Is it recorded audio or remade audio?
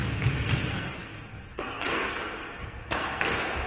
remade